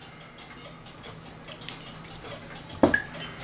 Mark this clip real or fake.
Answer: real